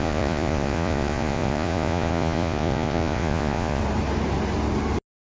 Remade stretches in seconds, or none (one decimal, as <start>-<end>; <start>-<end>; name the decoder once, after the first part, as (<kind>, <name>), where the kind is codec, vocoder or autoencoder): 0.0-3.8 (vocoder, Vocos)